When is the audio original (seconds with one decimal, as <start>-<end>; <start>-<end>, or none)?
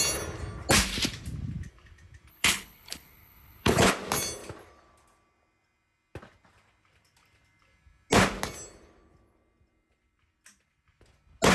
0.0-2.3; 3.9-11.5